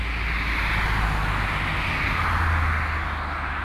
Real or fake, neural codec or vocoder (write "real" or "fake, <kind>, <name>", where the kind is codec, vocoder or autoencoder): real